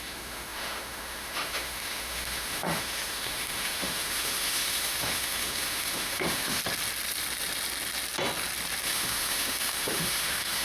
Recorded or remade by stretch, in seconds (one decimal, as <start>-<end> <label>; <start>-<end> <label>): 0.0-6.6 remade; 6.6-8.8 recorded; 8.8-10.6 remade